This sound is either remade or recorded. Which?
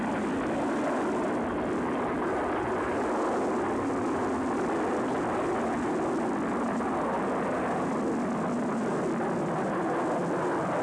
recorded